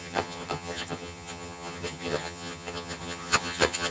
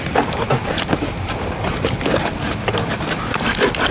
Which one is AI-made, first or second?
first